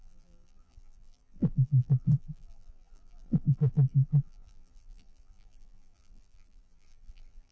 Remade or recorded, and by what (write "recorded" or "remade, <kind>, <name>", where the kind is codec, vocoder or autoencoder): remade, vocoder, BigVGAN v2